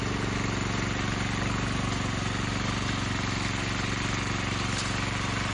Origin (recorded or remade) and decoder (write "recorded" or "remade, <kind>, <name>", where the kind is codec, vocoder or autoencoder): recorded